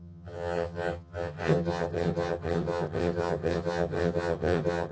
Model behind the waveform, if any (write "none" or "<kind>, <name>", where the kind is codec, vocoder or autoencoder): vocoder, HiFi-GAN